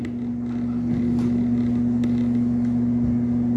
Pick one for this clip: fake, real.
real